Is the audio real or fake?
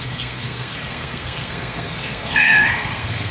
fake